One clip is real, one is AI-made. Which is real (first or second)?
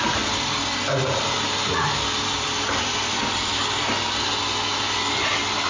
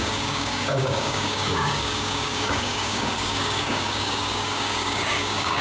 first